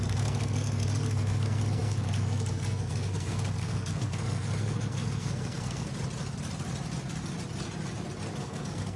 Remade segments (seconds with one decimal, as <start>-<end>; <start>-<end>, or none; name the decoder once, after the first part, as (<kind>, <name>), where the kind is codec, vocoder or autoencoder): 0.0-5.9 (codec, SNAC); 8.4-9.0

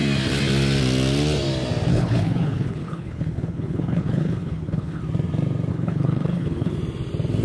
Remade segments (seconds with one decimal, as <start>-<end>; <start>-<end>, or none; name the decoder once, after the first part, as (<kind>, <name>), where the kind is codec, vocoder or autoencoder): 1.9-5.0 (codec, HILCodec); 5.7-6.7

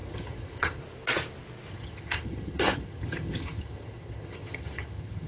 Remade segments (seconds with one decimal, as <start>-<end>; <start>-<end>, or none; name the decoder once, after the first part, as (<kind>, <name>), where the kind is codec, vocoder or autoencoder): 0.0-0.8 (vocoder, HiFi-GAN); 1.7-5.3

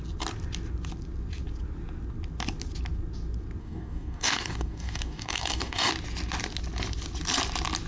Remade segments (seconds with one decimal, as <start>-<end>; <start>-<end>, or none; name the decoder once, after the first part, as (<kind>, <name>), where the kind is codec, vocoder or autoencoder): 3.6-5.9 (codec, DAC)

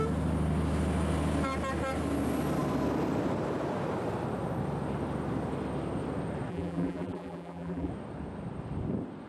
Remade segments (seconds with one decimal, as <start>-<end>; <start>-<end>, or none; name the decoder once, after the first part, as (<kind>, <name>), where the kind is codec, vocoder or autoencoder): 6.5-7.9 (vocoder, BigVGAN v2)

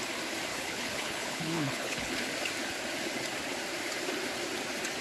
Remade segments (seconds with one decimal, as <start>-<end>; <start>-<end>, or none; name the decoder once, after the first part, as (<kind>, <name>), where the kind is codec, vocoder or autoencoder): 0.5-2.2 (codec, HILCodec)